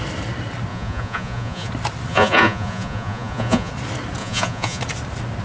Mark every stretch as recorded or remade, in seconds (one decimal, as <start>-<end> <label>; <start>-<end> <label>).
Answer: 0.0-0.7 recorded; 0.7-1.7 remade; 1.7-2.1 recorded; 2.1-3.7 remade; 3.7-4.2 recorded; 4.2-4.8 remade; 4.8-5.4 recorded